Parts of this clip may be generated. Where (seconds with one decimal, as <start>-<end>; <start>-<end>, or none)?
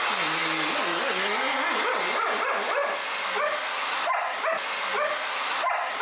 none